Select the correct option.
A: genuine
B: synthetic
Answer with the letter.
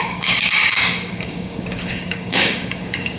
B